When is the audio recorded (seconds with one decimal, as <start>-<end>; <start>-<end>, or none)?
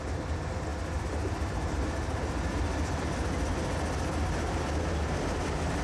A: 0.0-5.8